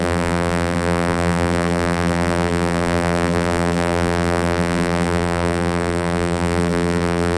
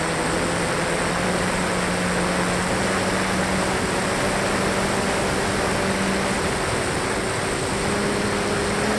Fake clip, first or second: first